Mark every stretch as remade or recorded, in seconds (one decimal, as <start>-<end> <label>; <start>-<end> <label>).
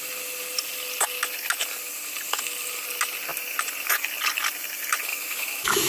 0.0-5.1 recorded; 5.1-5.9 remade